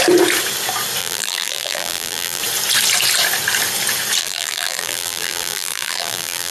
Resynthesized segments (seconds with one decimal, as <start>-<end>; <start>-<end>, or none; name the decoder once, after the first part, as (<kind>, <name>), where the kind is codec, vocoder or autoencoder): 1.0-2.4 (vocoder, BigVGAN v2); 4.2-6.5